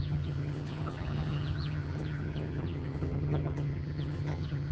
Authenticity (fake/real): fake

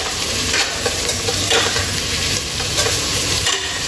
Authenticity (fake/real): fake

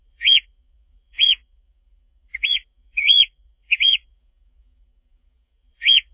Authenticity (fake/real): fake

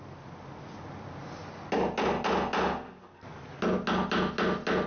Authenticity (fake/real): real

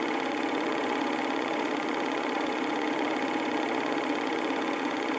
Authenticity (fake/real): fake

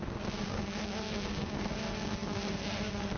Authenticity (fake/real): fake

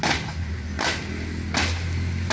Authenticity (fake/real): real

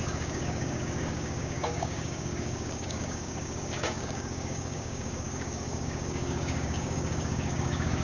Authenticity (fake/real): fake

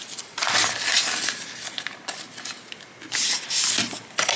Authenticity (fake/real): real